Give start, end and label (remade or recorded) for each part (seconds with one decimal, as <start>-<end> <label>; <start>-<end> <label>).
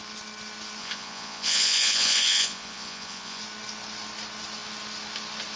0.0-0.8 recorded; 0.8-3.4 remade; 3.4-5.6 recorded